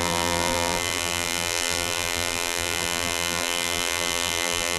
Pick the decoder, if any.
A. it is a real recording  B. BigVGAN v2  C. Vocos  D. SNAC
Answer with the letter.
B